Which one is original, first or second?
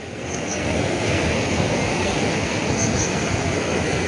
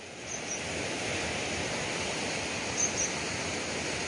second